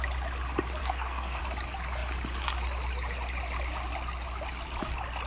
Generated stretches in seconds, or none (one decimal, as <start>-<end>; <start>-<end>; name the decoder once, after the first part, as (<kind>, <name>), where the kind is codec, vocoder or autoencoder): 0.8-1.4 (codec, SNAC)